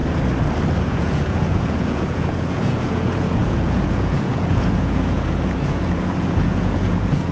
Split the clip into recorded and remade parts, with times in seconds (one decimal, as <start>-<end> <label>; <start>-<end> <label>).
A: 0.0-0.8 recorded; 0.8-7.3 remade